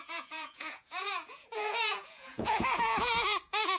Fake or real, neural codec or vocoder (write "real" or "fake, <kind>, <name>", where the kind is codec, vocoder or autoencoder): fake, vocoder, Vocos